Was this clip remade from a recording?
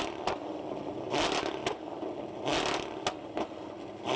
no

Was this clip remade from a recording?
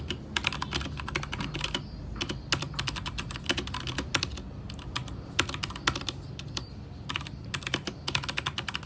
no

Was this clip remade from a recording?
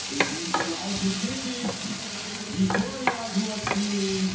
no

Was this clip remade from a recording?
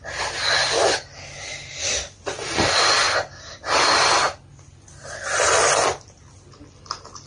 no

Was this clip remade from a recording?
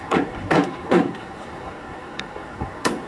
yes